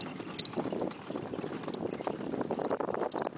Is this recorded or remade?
recorded